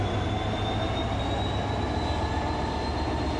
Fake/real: real